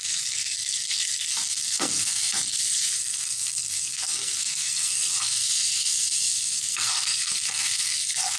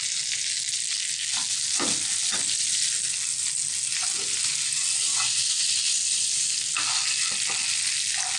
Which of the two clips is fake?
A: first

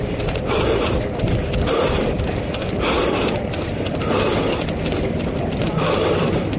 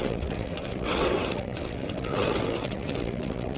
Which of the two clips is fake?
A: second